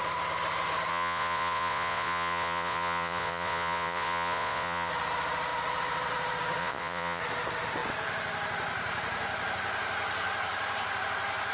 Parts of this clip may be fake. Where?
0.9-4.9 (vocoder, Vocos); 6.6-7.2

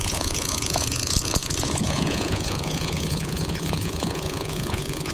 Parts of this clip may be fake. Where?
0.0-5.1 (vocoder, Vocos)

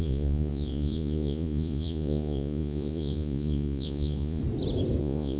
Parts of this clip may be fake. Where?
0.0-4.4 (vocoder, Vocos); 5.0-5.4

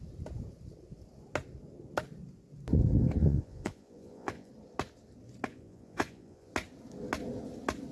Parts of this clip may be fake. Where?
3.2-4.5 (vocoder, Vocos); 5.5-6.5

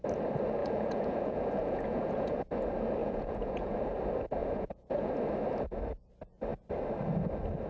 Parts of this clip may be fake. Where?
0.6-2.5 (vocoder, Vocos); 3.0-3.8; 4.4-5.1